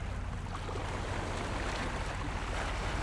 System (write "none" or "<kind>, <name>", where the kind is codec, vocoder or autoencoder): none